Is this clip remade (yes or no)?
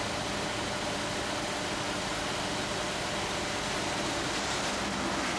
no